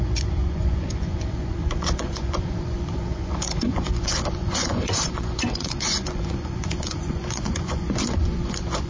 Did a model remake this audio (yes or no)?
yes